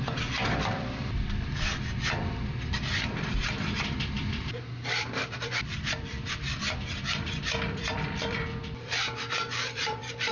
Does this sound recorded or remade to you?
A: remade